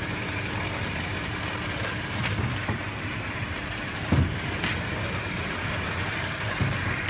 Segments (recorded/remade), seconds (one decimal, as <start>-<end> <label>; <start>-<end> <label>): 0.0-7.1 remade